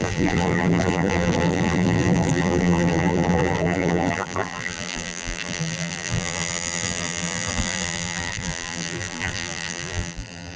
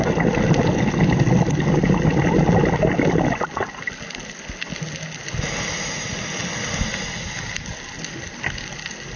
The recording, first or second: second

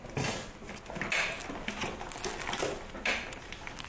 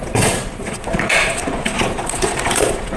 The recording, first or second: first